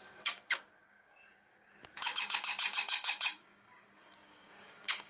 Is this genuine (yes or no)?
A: no